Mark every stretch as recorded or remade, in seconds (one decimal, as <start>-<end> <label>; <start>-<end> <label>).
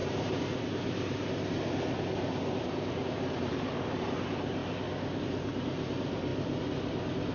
0.0-4.6 remade; 4.6-5.2 recorded; 5.2-6.3 remade; 6.3-7.3 recorded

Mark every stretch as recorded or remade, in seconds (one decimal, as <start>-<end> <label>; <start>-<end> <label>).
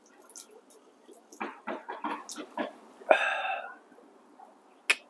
0.0-5.1 recorded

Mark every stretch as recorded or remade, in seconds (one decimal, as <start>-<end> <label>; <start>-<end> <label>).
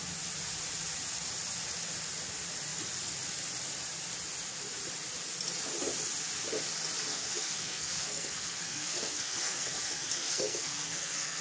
0.0-7.1 recorded; 7.1-11.4 remade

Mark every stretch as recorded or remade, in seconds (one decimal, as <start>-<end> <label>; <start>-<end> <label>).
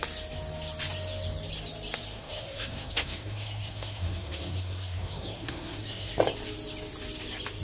0.0-2.1 recorded; 2.1-6.1 remade; 6.1-7.6 recorded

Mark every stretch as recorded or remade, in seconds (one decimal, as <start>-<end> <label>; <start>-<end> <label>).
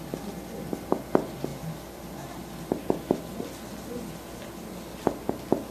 0.0-5.7 recorded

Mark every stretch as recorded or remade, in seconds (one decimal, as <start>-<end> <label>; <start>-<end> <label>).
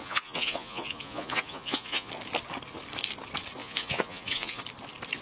0.0-2.1 remade; 2.1-3.6 recorded; 3.6-4.6 remade; 4.6-5.2 recorded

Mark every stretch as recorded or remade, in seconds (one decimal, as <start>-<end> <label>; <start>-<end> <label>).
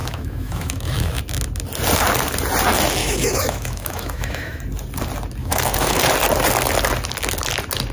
0.0-1.2 remade; 1.2-3.0 recorded; 3.0-4.6 remade; 4.6-5.4 recorded; 5.4-6.0 remade; 6.0-7.9 recorded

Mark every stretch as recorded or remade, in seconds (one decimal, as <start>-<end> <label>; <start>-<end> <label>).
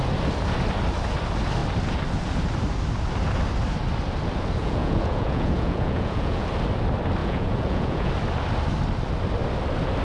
0.0-4.6 recorded; 4.6-6.5 remade; 6.5-7.2 recorded; 7.2-8.1 remade; 8.1-10.0 recorded